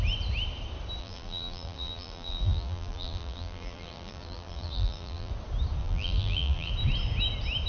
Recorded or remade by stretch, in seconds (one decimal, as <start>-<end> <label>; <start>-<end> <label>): 0.0-1.0 recorded; 1.0-5.3 remade; 5.3-5.8 recorded; 5.8-6.7 remade; 6.7-7.7 recorded